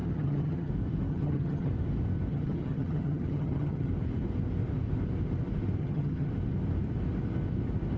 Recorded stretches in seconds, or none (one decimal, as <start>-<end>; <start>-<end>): 0.7-1.1; 1.7-2.3; 3.9-5.8; 6.3-8.0